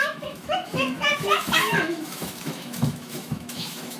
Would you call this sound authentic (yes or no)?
no